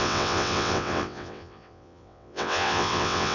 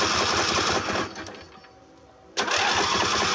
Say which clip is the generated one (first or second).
first